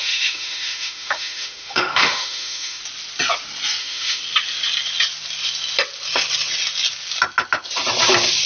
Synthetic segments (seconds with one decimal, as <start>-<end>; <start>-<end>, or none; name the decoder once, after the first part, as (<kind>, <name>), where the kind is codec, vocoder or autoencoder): 0.0-2.8 (autoencoder, DAC-VAE); 3.8-4.2